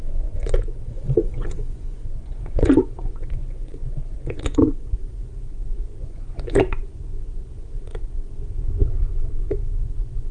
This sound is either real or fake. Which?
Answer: fake